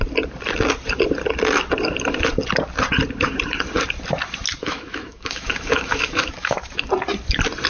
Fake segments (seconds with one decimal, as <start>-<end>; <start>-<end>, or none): 4.6-6.9